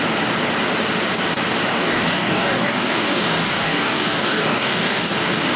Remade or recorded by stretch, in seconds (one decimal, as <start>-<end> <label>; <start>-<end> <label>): 0.0-1.7 recorded; 1.7-5.1 remade; 5.1-5.6 recorded